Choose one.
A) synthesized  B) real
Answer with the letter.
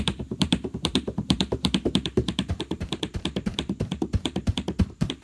A